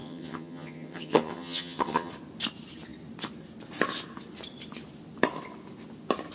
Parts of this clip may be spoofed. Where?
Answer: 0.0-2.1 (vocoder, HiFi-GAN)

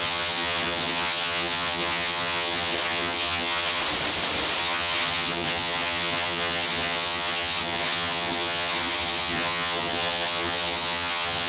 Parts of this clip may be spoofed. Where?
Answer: 0.0-3.8 (vocoder, HiFi-GAN); 4.6-11.5